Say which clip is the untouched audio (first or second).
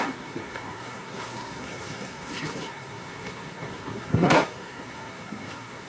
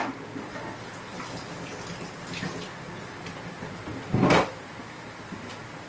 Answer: second